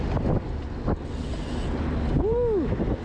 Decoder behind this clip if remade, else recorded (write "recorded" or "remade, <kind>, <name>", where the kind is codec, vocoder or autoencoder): recorded